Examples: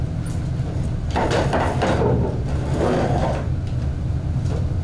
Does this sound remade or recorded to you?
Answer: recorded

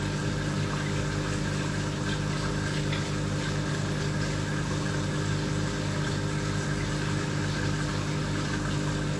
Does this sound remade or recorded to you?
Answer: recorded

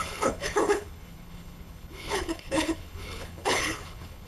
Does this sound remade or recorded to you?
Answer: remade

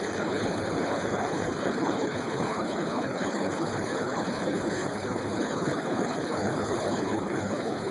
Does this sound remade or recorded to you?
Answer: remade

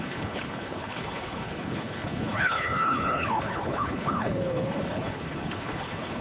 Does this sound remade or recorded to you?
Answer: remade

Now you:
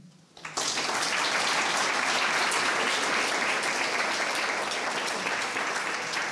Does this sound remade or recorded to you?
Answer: recorded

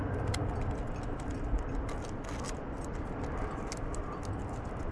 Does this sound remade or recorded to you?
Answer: recorded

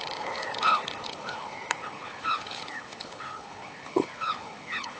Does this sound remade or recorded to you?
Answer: remade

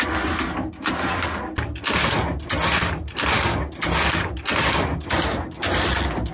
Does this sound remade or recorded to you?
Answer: recorded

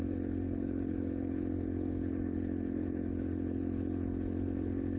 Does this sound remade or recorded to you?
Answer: remade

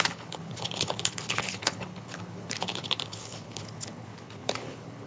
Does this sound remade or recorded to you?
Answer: remade